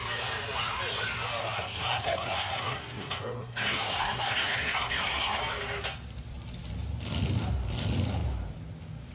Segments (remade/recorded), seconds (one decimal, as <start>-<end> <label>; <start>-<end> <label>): 0.0-1.4 recorded; 1.4-5.4 remade; 5.4-9.1 recorded